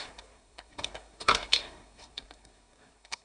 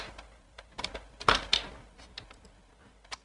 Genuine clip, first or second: second